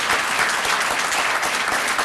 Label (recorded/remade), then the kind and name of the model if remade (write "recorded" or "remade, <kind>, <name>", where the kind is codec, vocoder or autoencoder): recorded